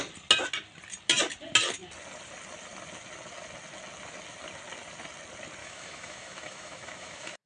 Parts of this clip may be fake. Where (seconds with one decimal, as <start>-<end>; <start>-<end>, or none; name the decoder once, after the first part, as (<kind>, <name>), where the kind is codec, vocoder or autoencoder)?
5.6-7.5 (autoencoder, DAC-VAE)